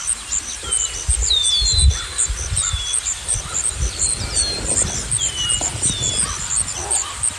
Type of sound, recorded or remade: recorded